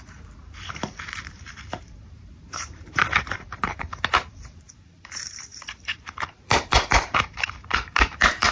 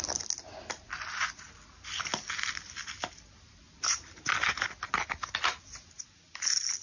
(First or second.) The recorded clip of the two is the second